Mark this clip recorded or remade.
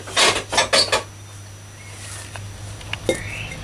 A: recorded